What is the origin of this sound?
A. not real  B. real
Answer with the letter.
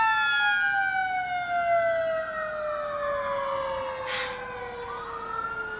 B